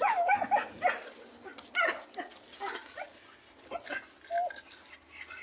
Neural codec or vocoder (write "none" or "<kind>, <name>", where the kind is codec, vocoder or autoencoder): none